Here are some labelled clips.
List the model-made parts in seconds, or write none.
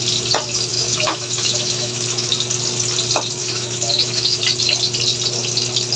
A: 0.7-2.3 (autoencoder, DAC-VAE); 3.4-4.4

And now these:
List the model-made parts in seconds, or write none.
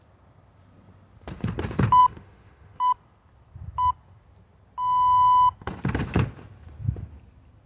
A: 2.0-3.0 (autoencoder, DAC-VAE)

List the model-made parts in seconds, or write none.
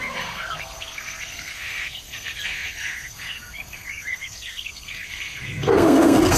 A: 0.0-6.4 (codec, SNAC)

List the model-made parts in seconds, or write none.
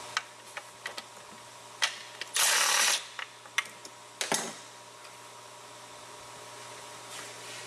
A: none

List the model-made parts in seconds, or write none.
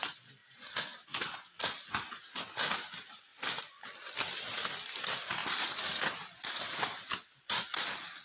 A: 5.4-6.0 (vocoder, Vocos)